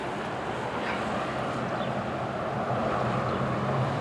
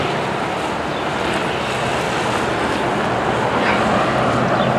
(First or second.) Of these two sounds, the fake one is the first